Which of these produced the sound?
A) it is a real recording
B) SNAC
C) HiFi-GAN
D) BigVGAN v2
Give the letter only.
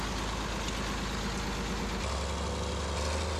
A